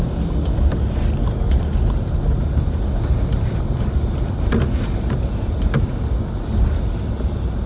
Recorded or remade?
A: recorded